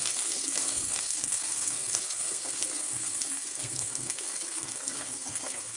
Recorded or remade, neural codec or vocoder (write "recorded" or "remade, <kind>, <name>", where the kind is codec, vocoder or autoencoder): remade, codec, SNAC